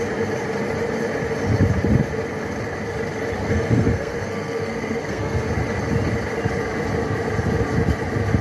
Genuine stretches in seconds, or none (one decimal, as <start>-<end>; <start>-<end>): 0.0-3.4; 5.4-8.4